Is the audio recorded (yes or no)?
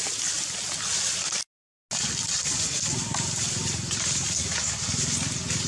yes